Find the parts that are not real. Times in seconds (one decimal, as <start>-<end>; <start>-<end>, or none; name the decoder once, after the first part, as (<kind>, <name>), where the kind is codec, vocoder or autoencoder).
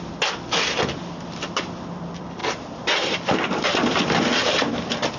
0.0-2.4 (vocoder, BigVGAN v2); 3.6-4.3